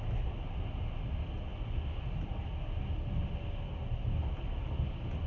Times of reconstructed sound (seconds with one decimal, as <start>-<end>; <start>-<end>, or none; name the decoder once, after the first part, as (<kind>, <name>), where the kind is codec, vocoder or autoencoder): none